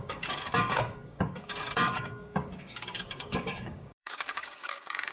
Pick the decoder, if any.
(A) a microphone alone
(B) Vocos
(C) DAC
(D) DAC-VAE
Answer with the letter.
C